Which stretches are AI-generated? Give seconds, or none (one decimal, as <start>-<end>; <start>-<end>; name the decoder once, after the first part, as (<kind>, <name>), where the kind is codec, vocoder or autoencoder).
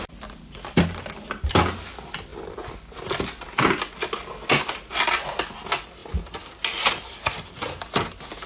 none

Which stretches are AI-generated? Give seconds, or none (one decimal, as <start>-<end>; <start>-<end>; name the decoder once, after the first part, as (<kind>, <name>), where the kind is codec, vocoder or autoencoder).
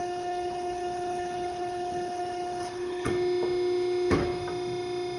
0.0-3.1 (codec, HILCodec)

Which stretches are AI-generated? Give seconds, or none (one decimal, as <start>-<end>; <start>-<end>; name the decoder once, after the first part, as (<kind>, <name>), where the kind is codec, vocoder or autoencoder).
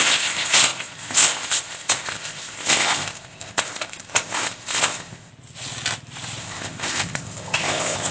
0.0-5.3 (codec, ZipCodec); 6.4-8.1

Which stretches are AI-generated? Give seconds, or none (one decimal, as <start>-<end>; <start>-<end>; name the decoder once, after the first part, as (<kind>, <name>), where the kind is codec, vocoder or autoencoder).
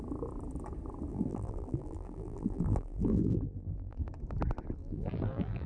1.1-4.0 (vocoder, BigVGAN v2); 4.8-5.7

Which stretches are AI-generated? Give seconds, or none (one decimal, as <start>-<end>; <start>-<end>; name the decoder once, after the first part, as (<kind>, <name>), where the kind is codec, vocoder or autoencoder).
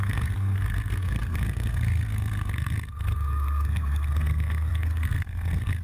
0.0-5.8 (codec, SNAC)